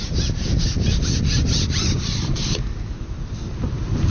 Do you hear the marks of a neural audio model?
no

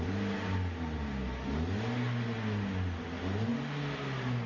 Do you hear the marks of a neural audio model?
no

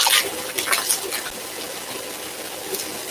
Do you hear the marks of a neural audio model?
no